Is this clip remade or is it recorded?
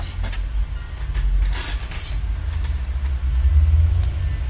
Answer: recorded